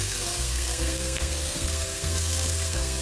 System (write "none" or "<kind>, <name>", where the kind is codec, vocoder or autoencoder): codec, SNAC